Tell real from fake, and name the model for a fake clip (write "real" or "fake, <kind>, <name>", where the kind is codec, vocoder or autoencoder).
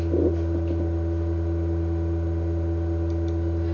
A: real